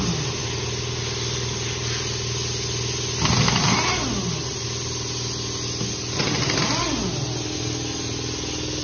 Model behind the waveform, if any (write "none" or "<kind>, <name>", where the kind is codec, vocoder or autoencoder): none